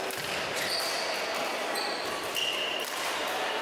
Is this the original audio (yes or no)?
yes